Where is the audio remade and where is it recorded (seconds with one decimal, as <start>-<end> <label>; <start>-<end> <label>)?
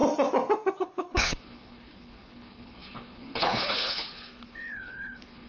0.0-0.8 recorded; 0.8-5.5 remade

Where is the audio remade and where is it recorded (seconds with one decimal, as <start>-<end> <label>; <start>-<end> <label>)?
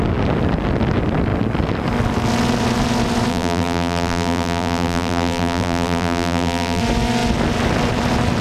0.0-3.3 recorded; 3.3-6.8 remade; 6.8-8.4 recorded